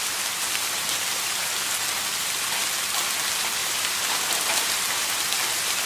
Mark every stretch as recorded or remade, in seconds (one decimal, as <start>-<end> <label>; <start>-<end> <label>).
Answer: 0.0-3.6 recorded; 3.6-4.8 remade; 4.8-5.9 recorded